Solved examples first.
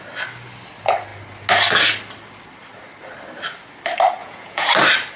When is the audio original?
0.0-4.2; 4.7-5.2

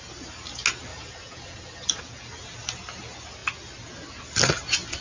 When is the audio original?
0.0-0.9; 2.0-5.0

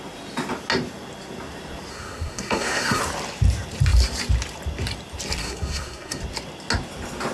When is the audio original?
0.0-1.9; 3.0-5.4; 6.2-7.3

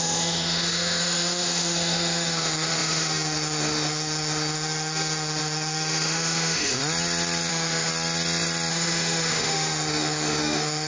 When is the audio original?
6.8-7.5; 7.9-8.7

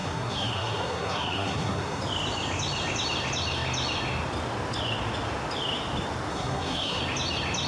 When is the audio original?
2.0-6.3; 7.0-7.7

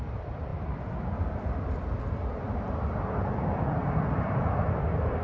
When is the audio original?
0.0-5.2